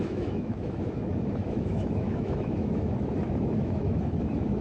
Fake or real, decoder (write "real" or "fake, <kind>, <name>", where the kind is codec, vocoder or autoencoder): fake, autoencoder, DAC-VAE